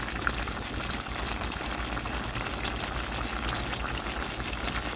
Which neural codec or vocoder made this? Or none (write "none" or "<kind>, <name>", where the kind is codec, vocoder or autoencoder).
none